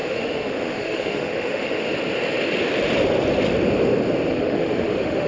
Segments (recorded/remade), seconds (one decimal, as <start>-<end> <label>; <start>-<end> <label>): 0.0-1.8 remade; 1.8-4.3 recorded; 4.3-5.3 remade